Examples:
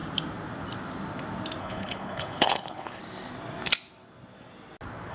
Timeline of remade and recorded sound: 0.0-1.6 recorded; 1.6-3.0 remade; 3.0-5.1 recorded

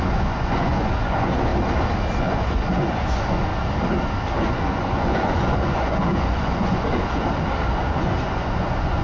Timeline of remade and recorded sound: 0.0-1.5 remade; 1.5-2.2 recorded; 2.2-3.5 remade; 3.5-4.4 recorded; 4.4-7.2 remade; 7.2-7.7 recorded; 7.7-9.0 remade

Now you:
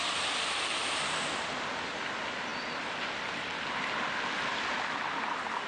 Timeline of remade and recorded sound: 0.0-2.5 remade; 2.5-5.7 recorded

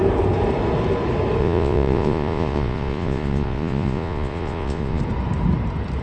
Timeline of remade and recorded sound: 0.0-1.4 recorded; 1.4-5.0 remade; 5.0-6.0 recorded

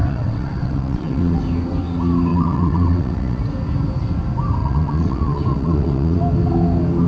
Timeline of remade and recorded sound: 0.0-1.4 remade; 1.4-2.3 recorded; 2.3-3.4 remade; 3.4-4.6 recorded; 4.6-6.2 remade; 6.2-7.1 recorded

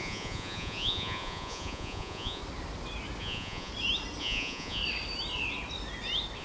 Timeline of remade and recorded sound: 0.0-2.4 remade; 2.4-3.2 recorded; 3.2-3.7 remade; 3.7-4.2 recorded; 4.2-4.8 remade; 4.8-6.4 recorded

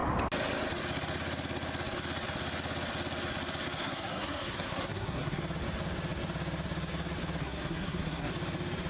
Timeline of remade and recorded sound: 0.0-3.8 recorded; 3.8-5.4 remade; 5.4-7.4 recorded; 7.4-8.3 remade; 8.3-8.9 recorded